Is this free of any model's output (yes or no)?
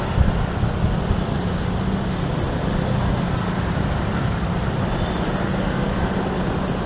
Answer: yes